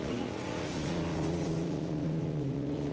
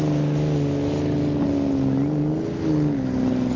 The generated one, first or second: first